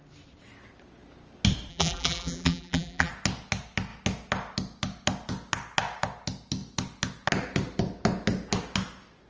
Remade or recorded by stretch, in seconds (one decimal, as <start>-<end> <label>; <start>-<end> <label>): 0.0-1.7 recorded; 1.7-3.1 remade; 3.1-9.3 recorded